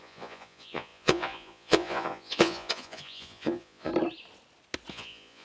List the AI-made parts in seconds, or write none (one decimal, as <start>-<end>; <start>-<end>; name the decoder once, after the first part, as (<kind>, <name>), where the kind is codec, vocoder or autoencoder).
0.0-3.9 (vocoder, Vocos); 4.9-5.4

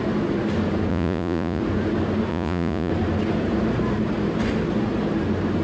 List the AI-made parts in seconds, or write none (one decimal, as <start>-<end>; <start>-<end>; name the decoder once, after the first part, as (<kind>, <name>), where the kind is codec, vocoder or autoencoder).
0.9-1.6 (vocoder, Vocos); 2.3-2.9

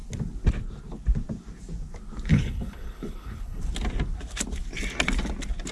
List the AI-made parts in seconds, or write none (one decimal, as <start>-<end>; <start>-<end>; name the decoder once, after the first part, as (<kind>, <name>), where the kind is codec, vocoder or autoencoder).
2.3-3.6 (codec, HILCodec)

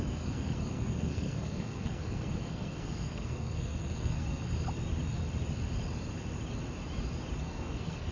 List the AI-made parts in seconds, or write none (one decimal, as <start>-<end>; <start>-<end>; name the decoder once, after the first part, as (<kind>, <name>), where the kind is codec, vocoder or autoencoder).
0.0-4.5 (codec, SNAC); 7.4-8.1

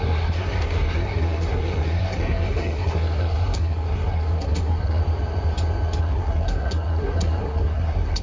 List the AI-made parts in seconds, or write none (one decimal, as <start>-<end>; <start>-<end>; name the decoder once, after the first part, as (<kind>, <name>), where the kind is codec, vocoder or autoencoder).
0.0-5.0 (codec, SNAC); 6.0-8.2